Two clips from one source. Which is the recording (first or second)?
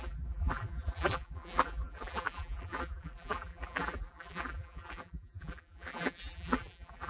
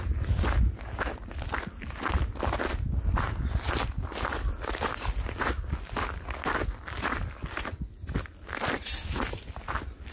second